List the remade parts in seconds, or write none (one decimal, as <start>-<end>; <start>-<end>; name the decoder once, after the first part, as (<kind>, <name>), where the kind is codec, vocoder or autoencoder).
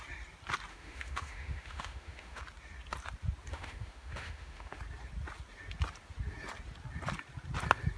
0.7-2.4 (autoencoder, DAC-VAE); 3.5-4.8